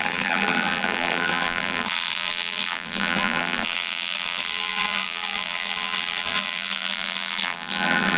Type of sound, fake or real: fake